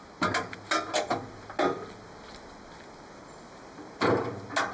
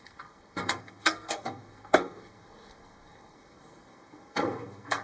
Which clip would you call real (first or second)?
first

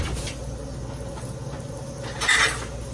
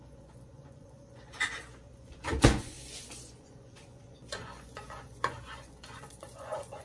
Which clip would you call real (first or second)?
first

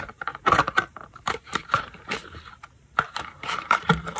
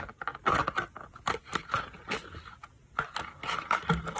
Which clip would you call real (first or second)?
second